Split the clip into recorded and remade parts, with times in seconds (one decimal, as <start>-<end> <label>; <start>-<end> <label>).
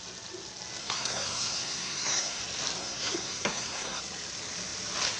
0.0-0.8 recorded; 0.8-2.4 remade; 2.4-2.8 recorded; 2.8-4.0 remade; 4.0-5.2 recorded